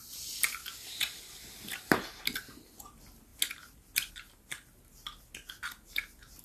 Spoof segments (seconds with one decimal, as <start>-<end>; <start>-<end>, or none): none